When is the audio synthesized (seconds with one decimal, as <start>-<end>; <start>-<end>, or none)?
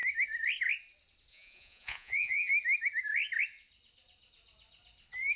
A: 1.3-2.5